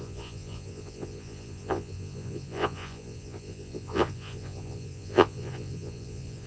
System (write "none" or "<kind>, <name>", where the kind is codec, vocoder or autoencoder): vocoder, Vocos